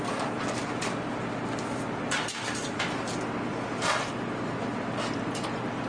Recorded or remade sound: recorded